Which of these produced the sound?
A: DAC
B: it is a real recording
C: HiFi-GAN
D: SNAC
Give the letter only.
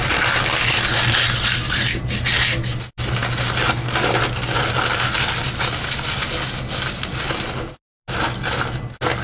B